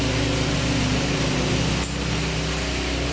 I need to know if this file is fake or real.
real